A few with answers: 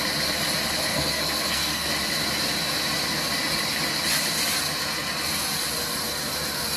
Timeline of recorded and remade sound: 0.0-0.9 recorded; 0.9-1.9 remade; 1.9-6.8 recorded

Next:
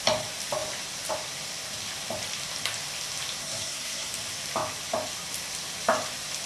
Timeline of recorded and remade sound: 0.0-3.4 recorded; 3.4-4.1 remade; 4.1-6.5 recorded

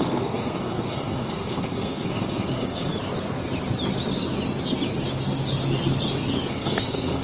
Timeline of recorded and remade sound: 0.0-2.9 remade; 2.9-6.5 recorded; 6.5-7.2 remade

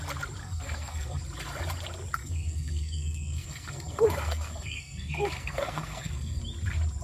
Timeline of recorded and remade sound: 0.0-0.4 recorded; 0.4-1.2 remade; 1.2-2.2 recorded; 2.2-6.4 remade; 6.4-7.0 recorded

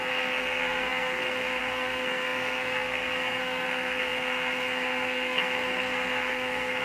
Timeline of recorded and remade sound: 0.0-6.8 remade

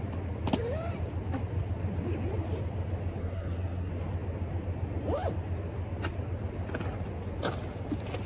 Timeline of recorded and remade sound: 0.0-3.2 recorded; 3.2-3.9 remade; 3.9-8.3 recorded